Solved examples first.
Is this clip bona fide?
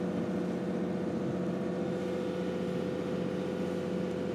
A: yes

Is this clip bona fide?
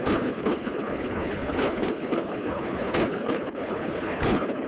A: no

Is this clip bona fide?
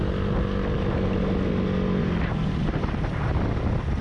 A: yes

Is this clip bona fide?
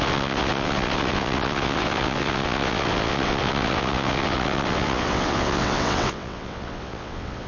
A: no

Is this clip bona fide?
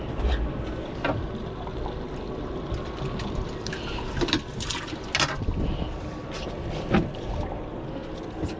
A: yes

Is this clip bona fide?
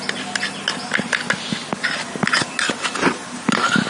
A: yes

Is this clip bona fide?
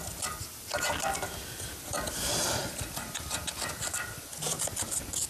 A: yes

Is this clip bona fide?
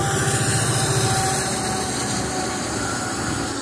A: yes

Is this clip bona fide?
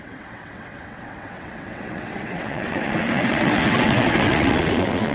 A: no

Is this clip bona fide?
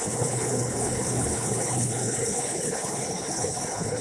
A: no